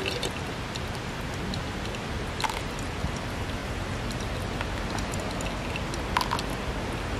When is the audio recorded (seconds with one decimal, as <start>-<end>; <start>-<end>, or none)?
0.0-3.6; 4.3-7.2